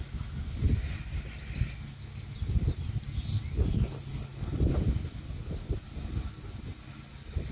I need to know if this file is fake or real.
real